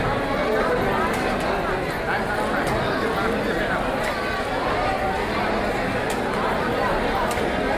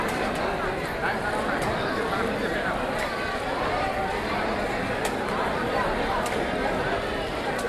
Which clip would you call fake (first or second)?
second